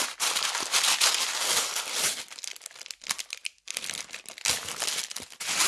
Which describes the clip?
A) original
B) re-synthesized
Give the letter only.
A